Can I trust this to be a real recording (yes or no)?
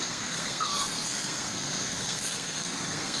no